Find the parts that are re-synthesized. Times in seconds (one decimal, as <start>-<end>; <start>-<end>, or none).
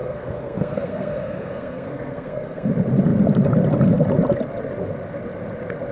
0.0-2.7